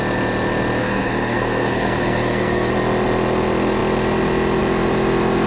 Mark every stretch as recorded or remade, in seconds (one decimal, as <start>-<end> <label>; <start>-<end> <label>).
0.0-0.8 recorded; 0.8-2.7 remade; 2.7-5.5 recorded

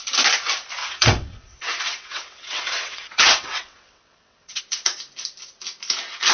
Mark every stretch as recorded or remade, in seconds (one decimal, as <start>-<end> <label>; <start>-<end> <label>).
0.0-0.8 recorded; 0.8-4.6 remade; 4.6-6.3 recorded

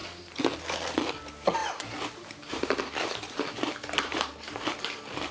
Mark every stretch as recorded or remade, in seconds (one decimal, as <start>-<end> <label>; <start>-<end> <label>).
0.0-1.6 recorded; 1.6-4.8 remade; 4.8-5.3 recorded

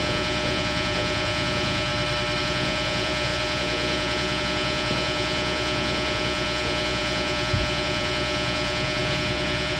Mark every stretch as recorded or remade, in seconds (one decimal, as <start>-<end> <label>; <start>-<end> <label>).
0.0-1.9 remade; 1.9-2.4 recorded; 2.4-9.8 remade

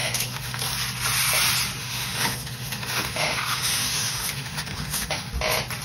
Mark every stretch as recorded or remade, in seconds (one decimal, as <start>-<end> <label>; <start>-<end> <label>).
0.0-0.6 remade; 0.6-1.8 recorded; 1.8-5.3 remade; 5.3-5.8 recorded